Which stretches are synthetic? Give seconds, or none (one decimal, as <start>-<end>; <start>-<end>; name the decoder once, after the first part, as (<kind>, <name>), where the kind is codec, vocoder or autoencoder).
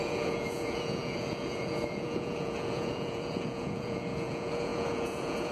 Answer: 0.0-5.5 (vocoder, Vocos)